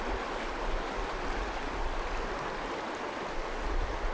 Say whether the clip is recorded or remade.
recorded